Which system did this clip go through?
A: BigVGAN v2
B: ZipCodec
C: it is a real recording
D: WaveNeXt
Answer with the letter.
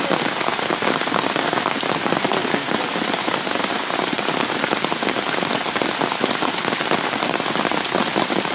C